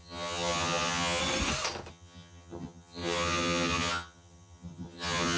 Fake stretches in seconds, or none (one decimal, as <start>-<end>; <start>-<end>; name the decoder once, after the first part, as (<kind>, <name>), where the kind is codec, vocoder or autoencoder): 0.0-1.2 (vocoder, HiFi-GAN); 1.9-5.4